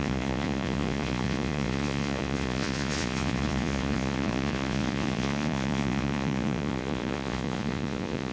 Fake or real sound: fake